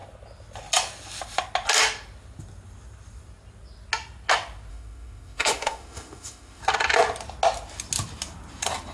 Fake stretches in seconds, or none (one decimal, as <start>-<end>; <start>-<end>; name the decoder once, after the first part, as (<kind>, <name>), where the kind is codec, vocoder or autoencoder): 4.7-6.6 (autoencoder, DAC-VAE)